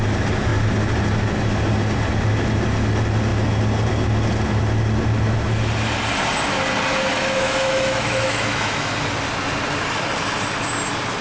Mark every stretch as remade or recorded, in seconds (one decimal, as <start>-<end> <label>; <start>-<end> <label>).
0.0-7.1 recorded; 7.1-8.9 remade; 8.9-11.2 recorded